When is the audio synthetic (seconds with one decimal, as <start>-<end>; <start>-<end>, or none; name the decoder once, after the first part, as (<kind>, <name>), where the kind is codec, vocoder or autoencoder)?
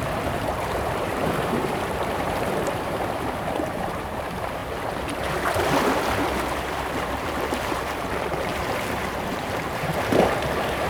0.0-4.6 (vocoder, BigVGAN v2); 7.0-10.9